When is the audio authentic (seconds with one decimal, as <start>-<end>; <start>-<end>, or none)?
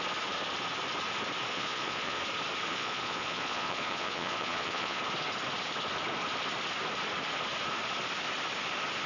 0.0-1.5; 2.2-2.7; 5.0-9.1